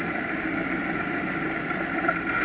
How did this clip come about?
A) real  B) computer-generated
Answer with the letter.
A